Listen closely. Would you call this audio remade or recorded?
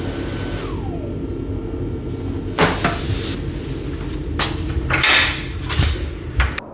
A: recorded